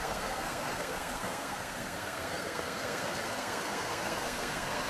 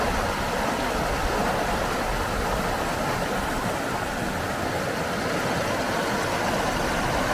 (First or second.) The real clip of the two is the second